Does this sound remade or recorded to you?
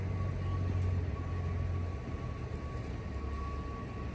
recorded